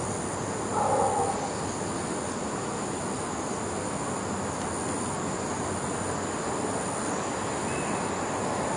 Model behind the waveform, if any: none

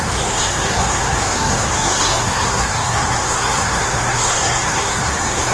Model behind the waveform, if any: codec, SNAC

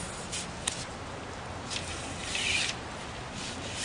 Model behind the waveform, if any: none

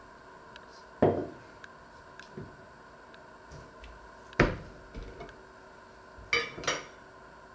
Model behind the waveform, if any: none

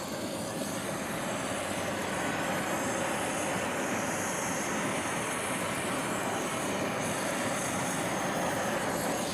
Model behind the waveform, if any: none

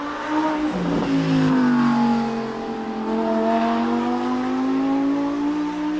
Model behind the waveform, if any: none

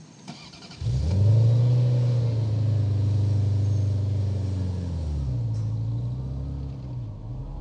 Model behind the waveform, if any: none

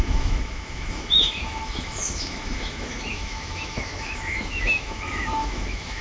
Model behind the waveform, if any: autoencoder, DAC-VAE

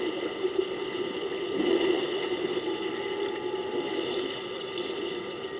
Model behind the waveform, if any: none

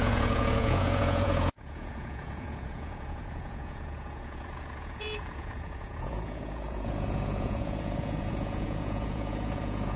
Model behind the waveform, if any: vocoder, Vocos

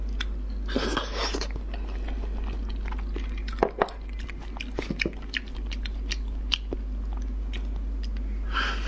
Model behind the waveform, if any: none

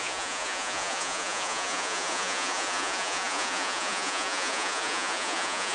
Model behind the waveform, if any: vocoder, Vocos